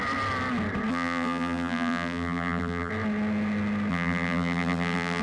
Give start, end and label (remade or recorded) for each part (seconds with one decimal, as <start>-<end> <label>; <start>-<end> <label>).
0.0-0.9 recorded; 0.9-2.9 remade; 2.9-3.9 recorded; 3.9-5.2 remade